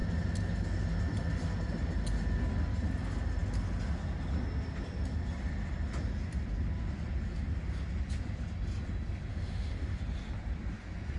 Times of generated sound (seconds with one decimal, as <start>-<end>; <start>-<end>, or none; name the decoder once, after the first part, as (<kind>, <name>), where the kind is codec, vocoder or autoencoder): 9.3-10.0 (autoencoder, DAC-VAE)

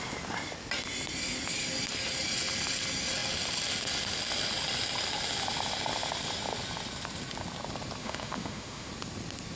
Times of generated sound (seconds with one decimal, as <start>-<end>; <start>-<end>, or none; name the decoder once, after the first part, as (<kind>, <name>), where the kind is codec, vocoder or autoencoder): 8.0-8.9 (autoencoder, DAC-VAE)

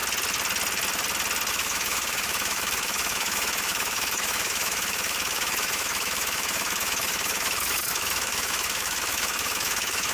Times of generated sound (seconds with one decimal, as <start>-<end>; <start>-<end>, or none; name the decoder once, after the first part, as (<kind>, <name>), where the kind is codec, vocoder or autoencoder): 1.5-10.1 (autoencoder, DAC-VAE)

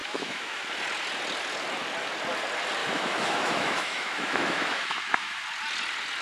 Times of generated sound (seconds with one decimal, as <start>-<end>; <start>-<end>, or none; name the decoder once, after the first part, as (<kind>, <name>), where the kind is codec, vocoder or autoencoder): 0.0-0.6 (autoencoder, DAC-VAE); 2.8-5.4

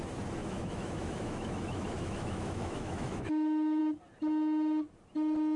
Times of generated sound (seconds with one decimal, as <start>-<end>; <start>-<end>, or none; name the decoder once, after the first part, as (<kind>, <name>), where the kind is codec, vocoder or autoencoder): 0.4-3.8 (autoencoder, DAC-VAE)

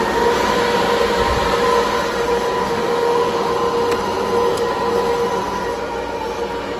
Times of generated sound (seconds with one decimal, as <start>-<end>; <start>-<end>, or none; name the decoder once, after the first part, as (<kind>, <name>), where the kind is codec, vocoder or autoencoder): 2.6-3.5 (autoencoder, DAC-VAE)

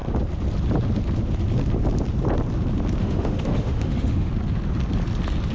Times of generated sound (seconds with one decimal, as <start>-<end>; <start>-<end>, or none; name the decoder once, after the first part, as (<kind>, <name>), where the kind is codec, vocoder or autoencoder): 3.0-4.3 (autoencoder, DAC-VAE)

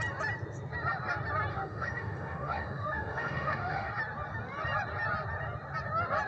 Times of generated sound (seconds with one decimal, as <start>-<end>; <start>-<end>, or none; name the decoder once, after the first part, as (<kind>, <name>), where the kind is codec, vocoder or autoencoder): 1.5-3.9 (autoencoder, DAC-VAE)